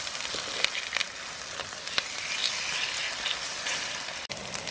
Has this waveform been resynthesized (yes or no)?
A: no